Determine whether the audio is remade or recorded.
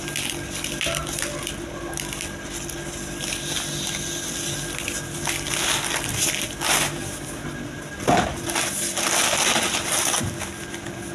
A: recorded